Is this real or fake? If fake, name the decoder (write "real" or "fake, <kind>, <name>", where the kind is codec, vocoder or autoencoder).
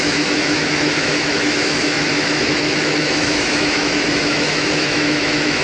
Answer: fake, autoencoder, DAC-VAE